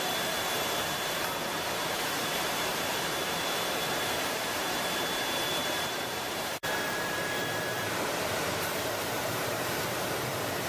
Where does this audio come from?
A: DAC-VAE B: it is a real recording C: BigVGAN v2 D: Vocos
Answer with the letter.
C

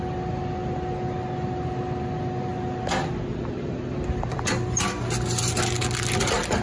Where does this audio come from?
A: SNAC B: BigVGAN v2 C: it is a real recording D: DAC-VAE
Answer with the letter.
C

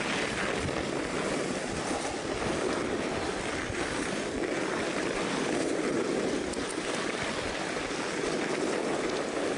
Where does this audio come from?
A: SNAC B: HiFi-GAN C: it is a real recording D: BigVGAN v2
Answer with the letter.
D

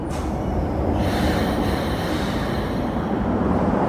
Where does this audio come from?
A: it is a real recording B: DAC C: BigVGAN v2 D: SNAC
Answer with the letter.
C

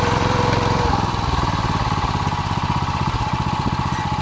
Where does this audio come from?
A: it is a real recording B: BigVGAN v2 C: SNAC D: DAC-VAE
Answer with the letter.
B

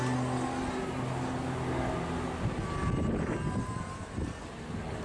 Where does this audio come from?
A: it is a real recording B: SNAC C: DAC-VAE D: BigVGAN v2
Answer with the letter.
A